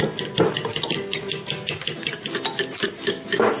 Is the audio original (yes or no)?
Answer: yes